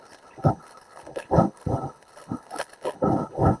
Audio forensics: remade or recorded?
remade